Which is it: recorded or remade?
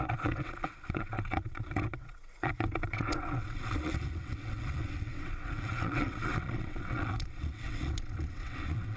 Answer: remade